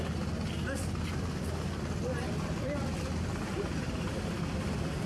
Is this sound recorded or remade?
recorded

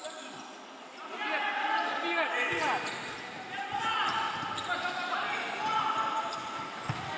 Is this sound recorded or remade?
recorded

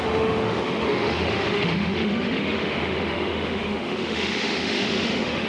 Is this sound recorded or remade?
remade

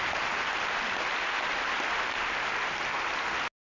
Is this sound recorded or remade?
recorded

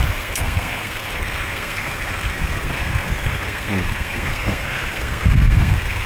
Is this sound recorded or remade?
remade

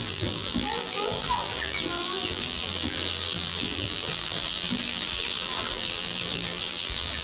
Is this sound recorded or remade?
remade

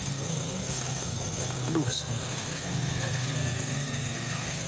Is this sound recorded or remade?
remade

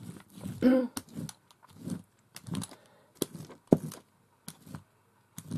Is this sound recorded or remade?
recorded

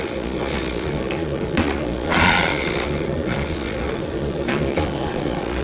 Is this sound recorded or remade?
remade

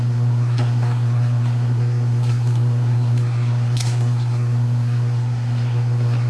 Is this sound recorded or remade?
remade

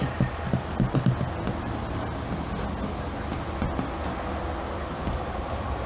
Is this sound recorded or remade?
recorded